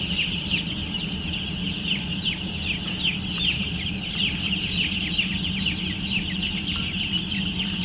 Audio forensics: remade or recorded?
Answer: recorded